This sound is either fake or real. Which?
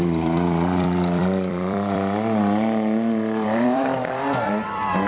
fake